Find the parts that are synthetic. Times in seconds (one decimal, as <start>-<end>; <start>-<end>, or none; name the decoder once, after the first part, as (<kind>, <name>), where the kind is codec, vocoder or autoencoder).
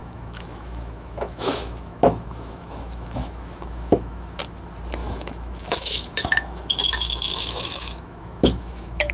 0.0-4.4 (autoencoder, DAC-VAE); 5.0-9.1